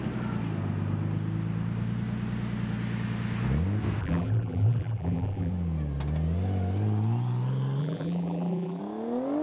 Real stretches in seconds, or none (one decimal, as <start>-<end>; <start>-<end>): 0.0-4.0; 5.5-7.8; 8.8-9.4